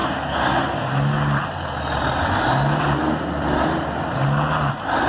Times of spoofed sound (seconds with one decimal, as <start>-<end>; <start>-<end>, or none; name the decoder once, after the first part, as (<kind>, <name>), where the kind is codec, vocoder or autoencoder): none